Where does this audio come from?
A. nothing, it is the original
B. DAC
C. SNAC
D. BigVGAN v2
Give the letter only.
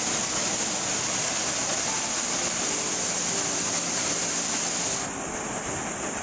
A